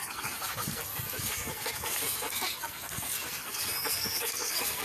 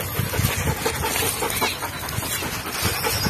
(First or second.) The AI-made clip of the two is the first